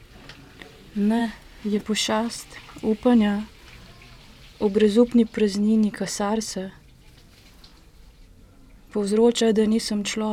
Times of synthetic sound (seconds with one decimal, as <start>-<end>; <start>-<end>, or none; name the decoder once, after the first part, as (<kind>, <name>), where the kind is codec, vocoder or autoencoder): 1.2-1.8 (codec, SNAC)